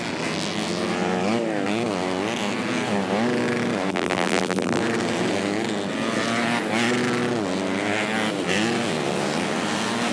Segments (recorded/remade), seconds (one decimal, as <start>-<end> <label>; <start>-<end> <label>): 0.0-3.9 recorded; 3.9-4.8 remade; 4.8-10.1 recorded